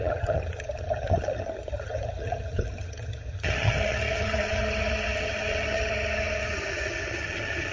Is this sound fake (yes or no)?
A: yes